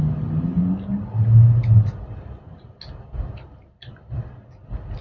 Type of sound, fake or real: real